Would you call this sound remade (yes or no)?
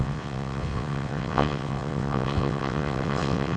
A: yes